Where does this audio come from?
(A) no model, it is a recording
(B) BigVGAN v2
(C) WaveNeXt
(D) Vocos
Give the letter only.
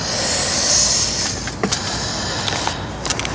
A